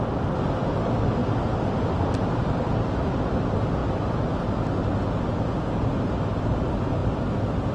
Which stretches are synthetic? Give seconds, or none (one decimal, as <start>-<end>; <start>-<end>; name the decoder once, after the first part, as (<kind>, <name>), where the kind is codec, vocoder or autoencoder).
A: none